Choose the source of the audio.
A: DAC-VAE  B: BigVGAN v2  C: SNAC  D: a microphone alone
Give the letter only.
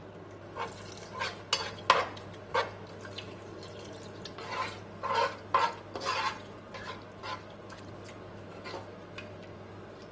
D